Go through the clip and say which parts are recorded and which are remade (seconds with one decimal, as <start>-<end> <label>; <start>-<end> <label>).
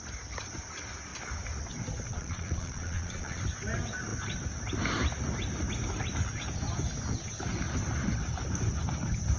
0.0-2.1 recorded; 2.1-3.4 remade; 3.4-9.4 recorded